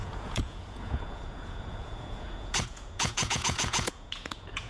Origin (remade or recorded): remade